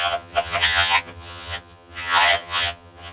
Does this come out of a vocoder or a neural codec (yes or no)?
yes